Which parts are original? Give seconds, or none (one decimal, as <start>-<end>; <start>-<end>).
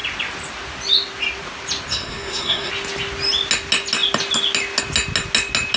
0.0-1.9; 2.7-5.8